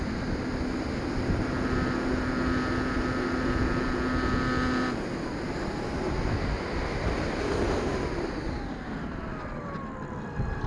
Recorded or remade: recorded